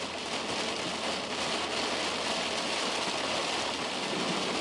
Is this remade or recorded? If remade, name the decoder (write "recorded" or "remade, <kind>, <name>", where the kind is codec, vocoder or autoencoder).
recorded